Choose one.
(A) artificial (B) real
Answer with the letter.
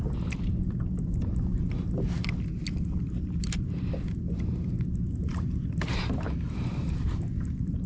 B